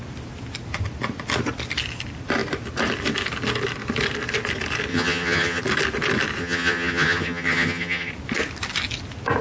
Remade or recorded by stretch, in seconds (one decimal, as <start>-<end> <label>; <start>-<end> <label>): 0.0-4.9 recorded; 4.9-5.6 remade; 5.6-6.4 recorded; 6.4-8.1 remade; 8.1-9.4 recorded